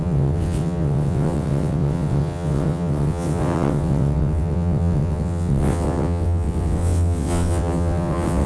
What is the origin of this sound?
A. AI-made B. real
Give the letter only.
A